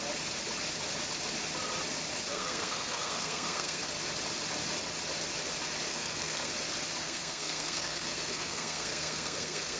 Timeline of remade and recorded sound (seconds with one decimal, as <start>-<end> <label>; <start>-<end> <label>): 0.0-2.3 recorded; 2.3-3.9 remade; 3.9-5.9 recorded; 5.9-6.5 remade; 6.5-7.0 recorded; 7.0-9.8 remade